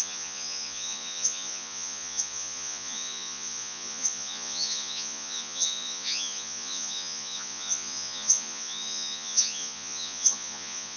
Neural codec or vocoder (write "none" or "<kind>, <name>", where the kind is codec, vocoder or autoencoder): vocoder, Vocos